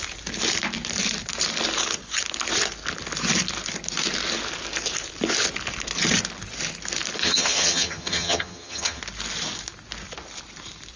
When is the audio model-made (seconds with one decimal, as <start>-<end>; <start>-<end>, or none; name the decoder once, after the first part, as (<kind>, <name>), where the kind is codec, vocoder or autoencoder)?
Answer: 7.2-9.0 (vocoder, HiFi-GAN)